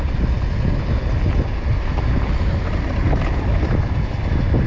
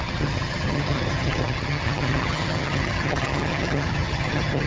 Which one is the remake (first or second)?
second